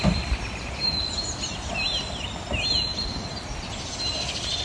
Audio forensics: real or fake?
real